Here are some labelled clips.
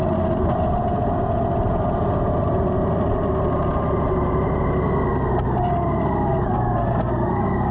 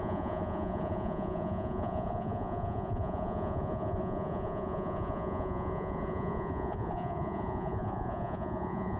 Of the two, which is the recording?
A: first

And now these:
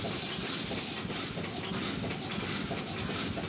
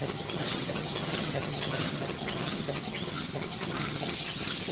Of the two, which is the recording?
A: first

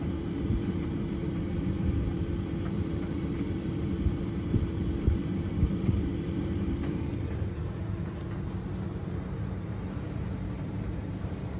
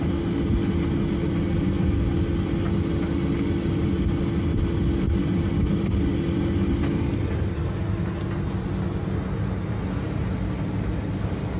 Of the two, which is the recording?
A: second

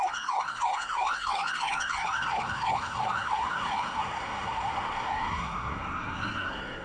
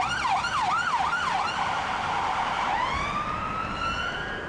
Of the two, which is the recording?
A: second